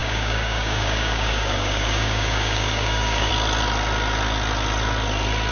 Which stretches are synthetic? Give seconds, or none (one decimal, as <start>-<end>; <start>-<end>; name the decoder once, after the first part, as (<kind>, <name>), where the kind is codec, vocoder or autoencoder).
0.0-3.3 (codec, DAC)